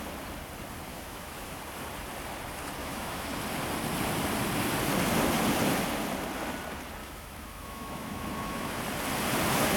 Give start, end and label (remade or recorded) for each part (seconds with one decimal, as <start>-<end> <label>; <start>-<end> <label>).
0.0-0.9 recorded; 0.9-1.6 remade; 1.6-2.8 recorded; 2.8-3.3 remade; 3.3-7.0 recorded; 7.0-8.8 remade; 8.8-9.8 recorded